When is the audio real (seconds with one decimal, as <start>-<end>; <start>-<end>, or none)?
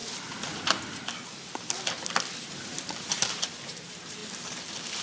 0.0-2.5